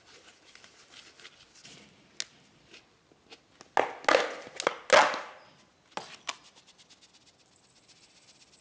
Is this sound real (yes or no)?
yes